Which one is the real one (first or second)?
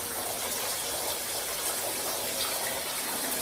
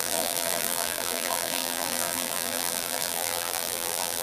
first